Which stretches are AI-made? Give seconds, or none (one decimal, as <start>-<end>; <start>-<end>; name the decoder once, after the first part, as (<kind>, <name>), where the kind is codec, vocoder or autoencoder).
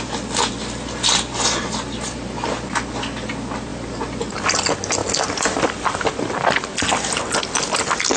none